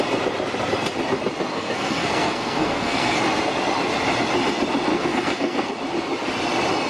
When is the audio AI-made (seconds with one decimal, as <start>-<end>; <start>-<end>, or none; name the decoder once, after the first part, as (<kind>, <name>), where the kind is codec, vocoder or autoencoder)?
1.5-3.2 (codec, SNAC); 4.9-5.7